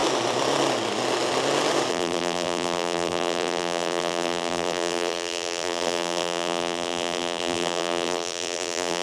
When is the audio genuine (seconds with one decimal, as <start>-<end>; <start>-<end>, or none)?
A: 0.0-1.9

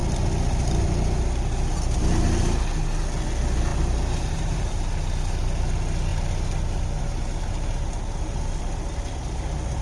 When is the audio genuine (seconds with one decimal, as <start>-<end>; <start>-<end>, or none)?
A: 0.0-3.7; 4.7-9.8

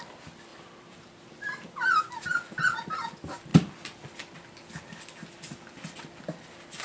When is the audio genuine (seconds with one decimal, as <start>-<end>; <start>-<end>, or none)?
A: 0.0-0.5; 2.1-6.8

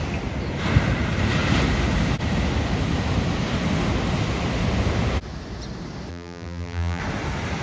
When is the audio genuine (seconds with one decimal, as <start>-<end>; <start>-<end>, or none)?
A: 0.0-6.1; 7.0-7.6

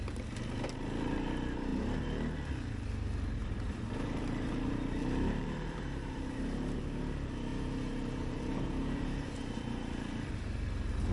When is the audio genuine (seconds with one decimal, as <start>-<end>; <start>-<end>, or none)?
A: 0.0-3.4; 6.8-7.5

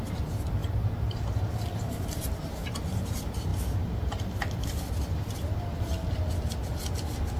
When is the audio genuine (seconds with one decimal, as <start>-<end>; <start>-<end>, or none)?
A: 0.0-7.4

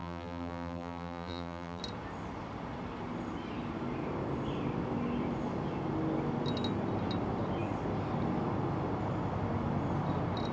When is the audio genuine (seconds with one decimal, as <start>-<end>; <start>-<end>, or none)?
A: 1.8-10.5

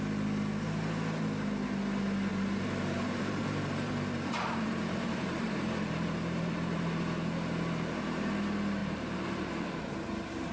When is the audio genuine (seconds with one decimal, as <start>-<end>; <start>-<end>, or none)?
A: 0.0-2.3; 7.0-8.8; 9.5-10.5